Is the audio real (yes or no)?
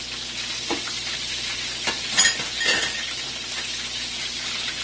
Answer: yes